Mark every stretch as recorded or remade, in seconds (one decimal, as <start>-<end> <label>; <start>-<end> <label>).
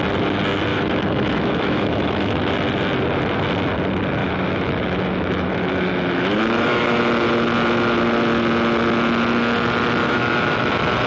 0.0-0.7 recorded; 0.7-2.5 remade; 2.5-4.2 recorded; 4.2-7.0 remade; 7.0-10.0 recorded; 10.0-10.7 remade; 10.7-11.1 recorded